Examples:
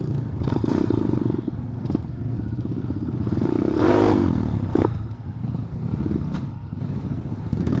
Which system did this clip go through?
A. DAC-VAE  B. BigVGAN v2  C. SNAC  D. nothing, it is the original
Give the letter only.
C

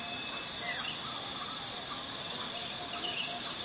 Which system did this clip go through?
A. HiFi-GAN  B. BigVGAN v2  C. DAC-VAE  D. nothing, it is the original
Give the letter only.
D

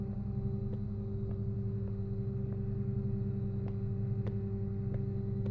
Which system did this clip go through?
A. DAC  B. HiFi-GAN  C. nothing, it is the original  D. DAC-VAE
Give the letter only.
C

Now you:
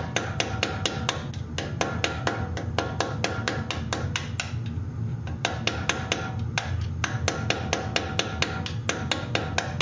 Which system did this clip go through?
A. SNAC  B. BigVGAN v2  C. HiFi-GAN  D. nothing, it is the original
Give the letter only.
D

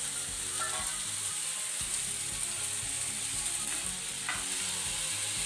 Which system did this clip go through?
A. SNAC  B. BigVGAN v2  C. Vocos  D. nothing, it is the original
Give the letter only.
D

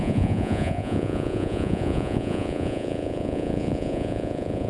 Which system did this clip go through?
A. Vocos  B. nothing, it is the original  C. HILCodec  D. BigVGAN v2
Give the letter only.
A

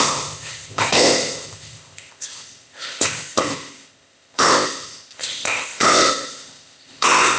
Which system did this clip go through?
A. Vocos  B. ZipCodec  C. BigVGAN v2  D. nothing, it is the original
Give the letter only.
B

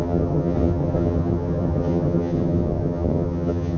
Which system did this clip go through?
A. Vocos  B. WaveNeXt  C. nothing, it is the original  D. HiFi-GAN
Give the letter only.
D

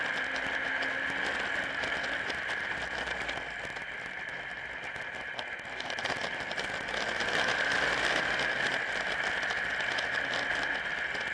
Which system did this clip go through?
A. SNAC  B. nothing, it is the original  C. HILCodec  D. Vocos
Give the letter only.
B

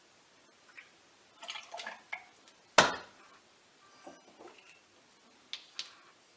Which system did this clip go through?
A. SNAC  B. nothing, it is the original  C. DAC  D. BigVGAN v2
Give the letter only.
B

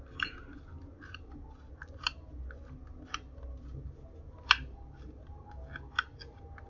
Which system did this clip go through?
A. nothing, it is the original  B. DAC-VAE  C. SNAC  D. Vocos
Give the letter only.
A